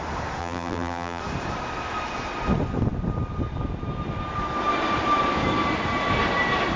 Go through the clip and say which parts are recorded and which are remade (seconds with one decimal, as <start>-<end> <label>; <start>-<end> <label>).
0.0-0.4 recorded; 0.4-1.2 remade; 1.2-6.8 recorded